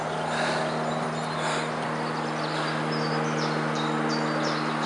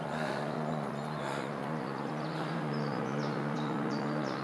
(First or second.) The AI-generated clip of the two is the second